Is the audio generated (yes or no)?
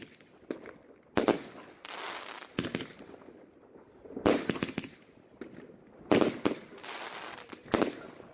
no